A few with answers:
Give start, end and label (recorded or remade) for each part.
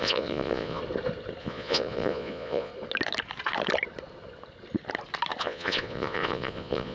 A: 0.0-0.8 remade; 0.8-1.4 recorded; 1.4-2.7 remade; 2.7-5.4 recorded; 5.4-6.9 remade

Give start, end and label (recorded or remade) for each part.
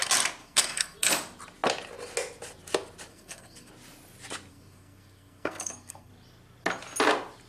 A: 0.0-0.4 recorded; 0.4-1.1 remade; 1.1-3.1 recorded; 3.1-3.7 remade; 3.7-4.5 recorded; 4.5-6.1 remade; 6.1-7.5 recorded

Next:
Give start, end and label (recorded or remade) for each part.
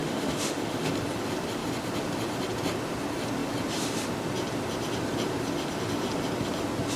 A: 0.0-0.9 remade; 0.9-7.0 recorded